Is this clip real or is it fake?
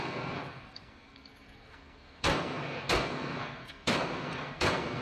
fake